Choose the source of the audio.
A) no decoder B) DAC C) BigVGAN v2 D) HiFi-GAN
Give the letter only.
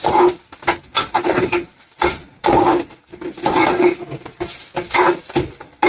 C